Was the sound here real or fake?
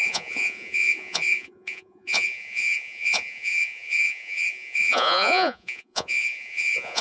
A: fake